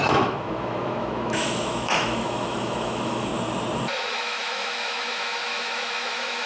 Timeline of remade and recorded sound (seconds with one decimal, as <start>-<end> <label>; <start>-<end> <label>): 0.0-3.3 remade; 3.3-4.1 recorded; 4.1-6.5 remade